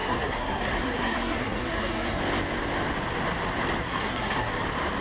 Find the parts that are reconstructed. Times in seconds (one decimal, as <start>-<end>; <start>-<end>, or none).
0.0-2.2; 3.8-4.5